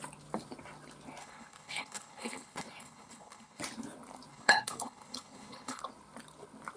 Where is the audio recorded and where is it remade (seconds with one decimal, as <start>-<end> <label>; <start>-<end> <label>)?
0.0-1.2 recorded; 1.2-3.6 remade; 3.6-4.3 recorded; 4.3-5.8 remade; 5.8-6.8 recorded